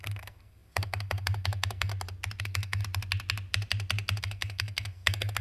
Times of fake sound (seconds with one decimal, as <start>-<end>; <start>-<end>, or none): 0.0-1.9; 2.4-2.8; 4.2-5.4